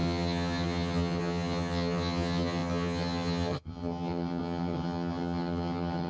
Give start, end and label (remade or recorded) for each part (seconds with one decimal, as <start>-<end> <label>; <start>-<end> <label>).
0.0-6.1 remade